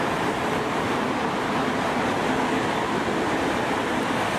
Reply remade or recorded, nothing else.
remade